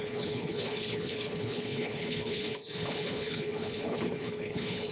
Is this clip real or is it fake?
fake